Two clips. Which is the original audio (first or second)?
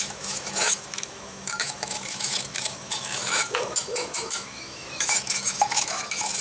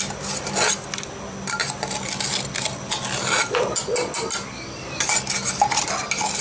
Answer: second